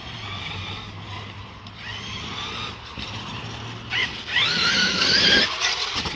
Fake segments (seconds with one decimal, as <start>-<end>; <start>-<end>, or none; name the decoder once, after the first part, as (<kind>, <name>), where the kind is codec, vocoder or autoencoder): none